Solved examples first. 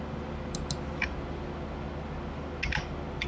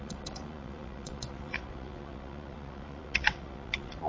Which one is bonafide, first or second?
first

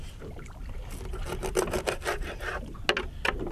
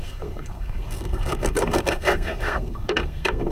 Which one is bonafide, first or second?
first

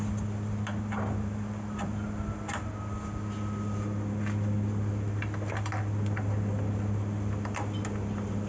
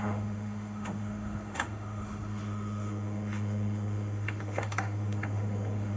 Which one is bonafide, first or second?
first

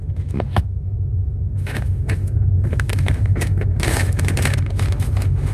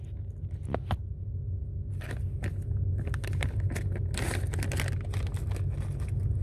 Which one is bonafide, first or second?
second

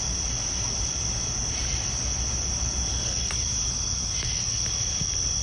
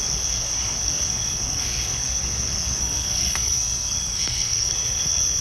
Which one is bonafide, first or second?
first